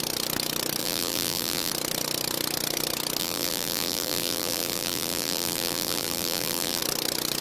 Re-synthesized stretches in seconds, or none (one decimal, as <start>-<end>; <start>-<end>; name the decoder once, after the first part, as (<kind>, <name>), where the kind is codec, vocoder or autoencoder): 0.8-1.7 (vocoder, BigVGAN v2); 3.2-6.8